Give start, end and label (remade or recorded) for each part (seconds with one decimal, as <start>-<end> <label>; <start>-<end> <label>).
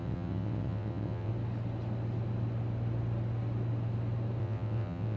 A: 0.0-1.3 remade; 1.3-4.4 recorded; 4.4-5.2 remade